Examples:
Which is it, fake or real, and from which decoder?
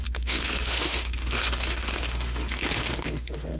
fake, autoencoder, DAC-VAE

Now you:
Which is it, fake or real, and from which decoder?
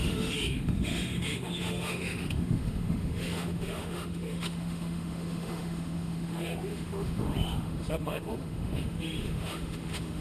fake, autoencoder, DAC-VAE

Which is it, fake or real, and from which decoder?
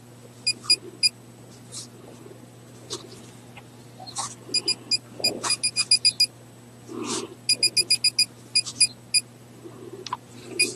real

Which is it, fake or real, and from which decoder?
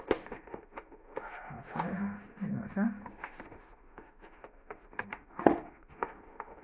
fake, autoencoder, DAC-VAE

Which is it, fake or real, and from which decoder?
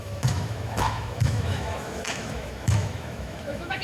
fake, autoencoder, DAC-VAE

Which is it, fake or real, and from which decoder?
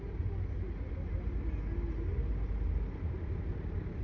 real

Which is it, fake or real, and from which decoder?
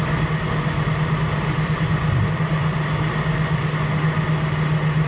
real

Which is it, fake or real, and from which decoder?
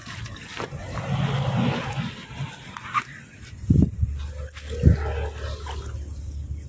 real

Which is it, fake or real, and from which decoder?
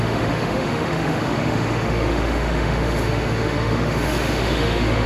fake, autoencoder, DAC-VAE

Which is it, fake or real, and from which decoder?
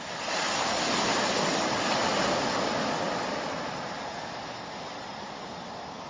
real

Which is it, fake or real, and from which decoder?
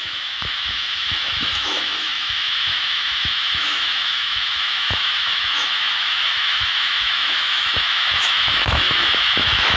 fake, autoencoder, DAC-VAE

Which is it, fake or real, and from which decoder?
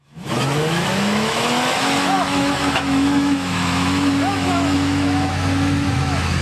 fake, autoencoder, DAC-VAE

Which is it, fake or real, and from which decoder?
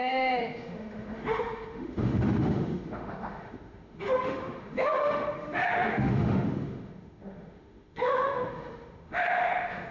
fake, autoencoder, DAC-VAE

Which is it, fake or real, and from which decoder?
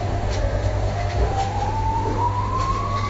fake, autoencoder, DAC-VAE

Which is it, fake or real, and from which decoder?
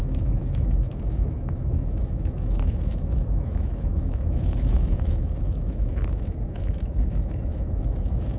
fake, autoencoder, DAC-VAE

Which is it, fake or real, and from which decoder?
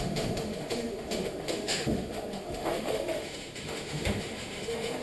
fake, autoencoder, DAC-VAE